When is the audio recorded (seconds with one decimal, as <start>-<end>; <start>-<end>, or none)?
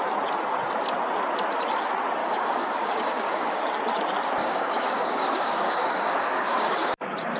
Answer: 0.0-2.2; 3.6-4.4; 6.9-7.4